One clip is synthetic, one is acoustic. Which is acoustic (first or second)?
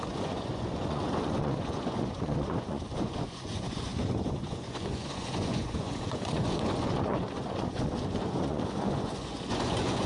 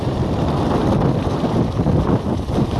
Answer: second